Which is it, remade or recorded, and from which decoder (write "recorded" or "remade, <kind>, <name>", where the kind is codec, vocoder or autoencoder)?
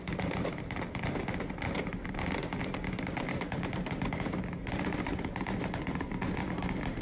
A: recorded